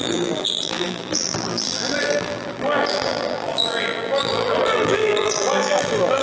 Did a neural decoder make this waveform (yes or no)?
yes